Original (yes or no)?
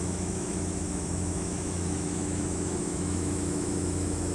no